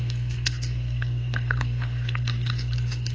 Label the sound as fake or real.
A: fake